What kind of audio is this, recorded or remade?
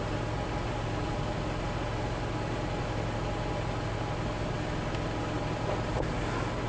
recorded